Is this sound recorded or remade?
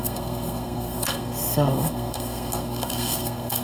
remade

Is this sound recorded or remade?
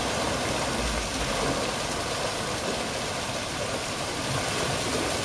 recorded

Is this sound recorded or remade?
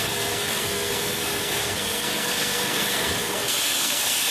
remade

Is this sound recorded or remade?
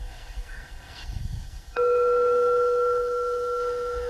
remade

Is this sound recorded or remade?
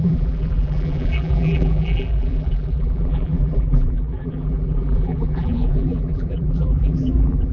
remade